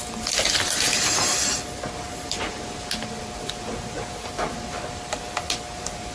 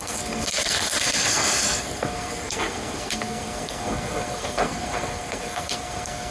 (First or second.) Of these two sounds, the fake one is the second